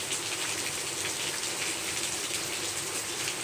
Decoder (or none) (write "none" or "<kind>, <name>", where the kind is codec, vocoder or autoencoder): none